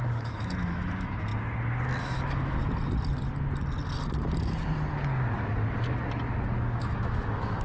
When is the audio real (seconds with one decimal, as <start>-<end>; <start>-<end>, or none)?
1.3-2.0; 2.6-6.7